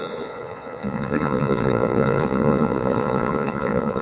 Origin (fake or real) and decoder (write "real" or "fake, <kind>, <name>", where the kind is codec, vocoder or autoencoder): fake, vocoder, Vocos